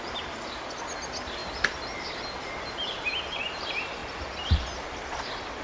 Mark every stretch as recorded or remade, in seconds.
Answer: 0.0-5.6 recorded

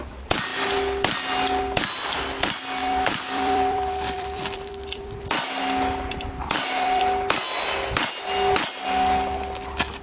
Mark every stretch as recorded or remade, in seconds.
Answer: 0.0-2.8 recorded; 2.8-5.6 remade; 5.6-6.4 recorded; 6.4-7.0 remade; 7.0-10.0 recorded

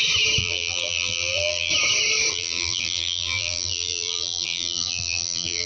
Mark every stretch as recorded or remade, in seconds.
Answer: 0.0-0.4 recorded; 0.4-1.7 remade; 1.7-2.3 recorded; 2.3-5.7 remade

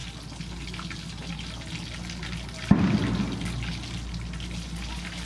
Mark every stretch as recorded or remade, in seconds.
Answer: 0.0-5.3 recorded

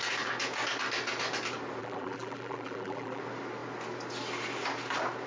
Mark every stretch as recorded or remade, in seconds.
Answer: 0.0-1.8 recorded; 1.8-3.2 remade; 3.2-5.3 recorded

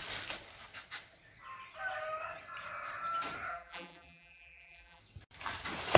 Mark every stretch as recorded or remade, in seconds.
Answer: 0.0-3.5 recorded; 3.5-5.0 remade; 5.0-6.0 recorded